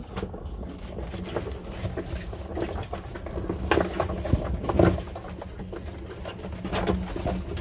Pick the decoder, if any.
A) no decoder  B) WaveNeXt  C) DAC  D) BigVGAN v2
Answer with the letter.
A